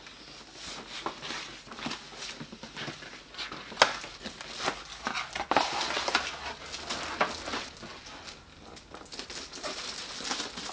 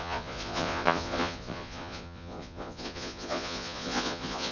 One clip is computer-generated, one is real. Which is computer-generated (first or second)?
second